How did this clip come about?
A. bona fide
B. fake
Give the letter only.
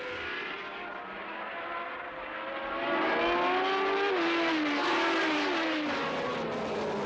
A